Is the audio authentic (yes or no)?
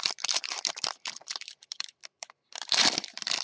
no